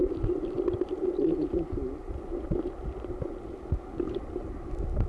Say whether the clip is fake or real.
real